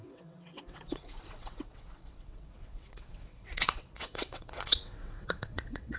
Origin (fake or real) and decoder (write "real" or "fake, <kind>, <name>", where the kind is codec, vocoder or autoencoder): fake, vocoder, WaveNeXt